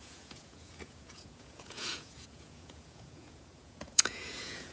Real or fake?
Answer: fake